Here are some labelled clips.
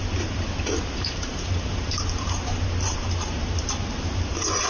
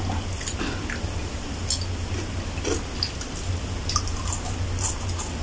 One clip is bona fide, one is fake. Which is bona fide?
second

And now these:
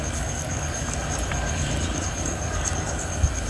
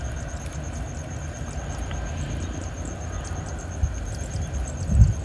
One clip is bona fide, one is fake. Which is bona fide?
second